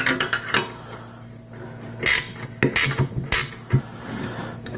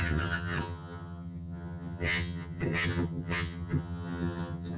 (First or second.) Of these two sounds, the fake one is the second